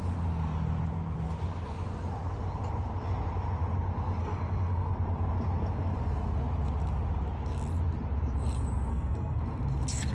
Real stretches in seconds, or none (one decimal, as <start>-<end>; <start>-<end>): 0.0-4.2; 4.9-8.9; 9.4-10.1